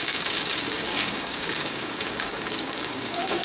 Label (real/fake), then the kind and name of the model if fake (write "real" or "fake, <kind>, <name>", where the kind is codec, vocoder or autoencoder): fake, codec, DAC